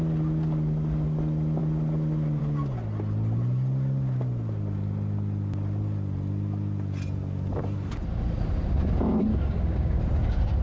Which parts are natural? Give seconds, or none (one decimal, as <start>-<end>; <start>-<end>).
0.0-9.3; 10.0-10.6